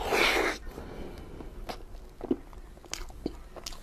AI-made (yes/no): no